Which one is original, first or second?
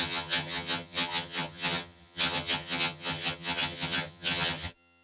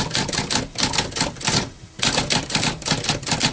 second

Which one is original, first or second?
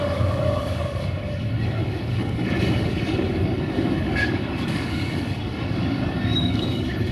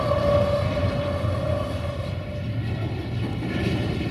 second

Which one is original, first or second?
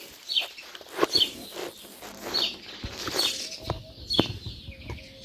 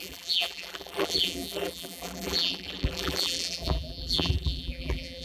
first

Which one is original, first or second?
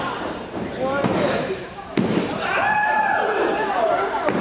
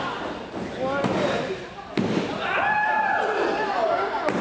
second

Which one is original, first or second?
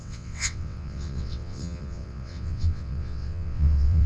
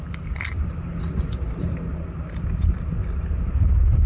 second